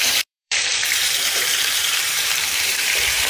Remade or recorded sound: remade